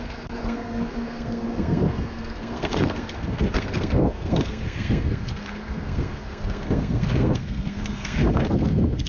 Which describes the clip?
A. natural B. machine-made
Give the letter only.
B